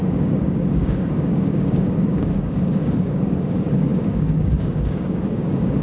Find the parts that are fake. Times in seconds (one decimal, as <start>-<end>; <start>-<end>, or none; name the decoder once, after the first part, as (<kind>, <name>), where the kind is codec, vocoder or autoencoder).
0.0-5.8 (codec, DAC)

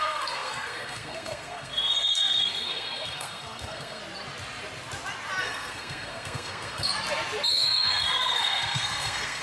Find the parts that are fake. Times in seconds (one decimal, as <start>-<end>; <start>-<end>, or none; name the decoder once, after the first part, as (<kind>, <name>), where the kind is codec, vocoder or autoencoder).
0.0-4.0 (codec, SNAC); 5.4-6.9; 7.5-9.4